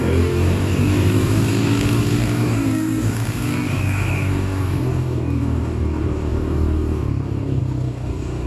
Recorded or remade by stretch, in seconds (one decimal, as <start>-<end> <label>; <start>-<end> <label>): 0.0-8.5 remade